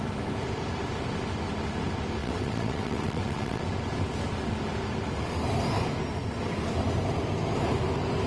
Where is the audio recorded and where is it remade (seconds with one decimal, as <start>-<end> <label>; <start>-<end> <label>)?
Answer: 0.0-2.2 recorded; 2.2-3.6 remade; 3.6-8.3 recorded